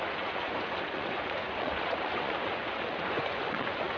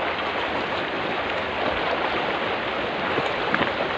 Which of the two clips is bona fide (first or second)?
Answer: second